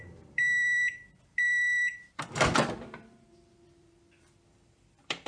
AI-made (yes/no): yes